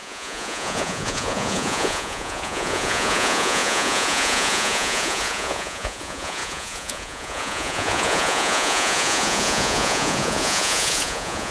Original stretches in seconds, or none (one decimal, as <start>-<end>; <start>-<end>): none